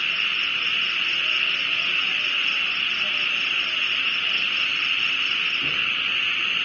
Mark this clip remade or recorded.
recorded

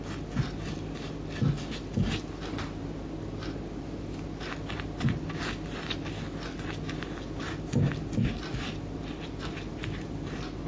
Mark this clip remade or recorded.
recorded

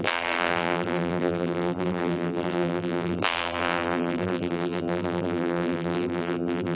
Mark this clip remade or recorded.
remade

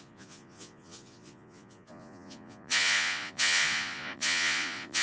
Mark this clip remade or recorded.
remade